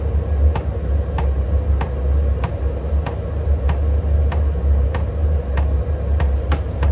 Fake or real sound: real